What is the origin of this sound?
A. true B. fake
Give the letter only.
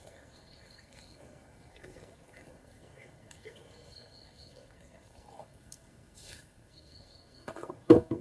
B